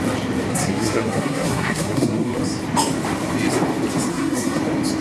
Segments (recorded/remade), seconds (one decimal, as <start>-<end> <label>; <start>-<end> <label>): 0.0-0.5 recorded; 0.5-2.4 remade; 2.4-4.1 recorded; 4.1-4.6 remade; 4.6-5.0 recorded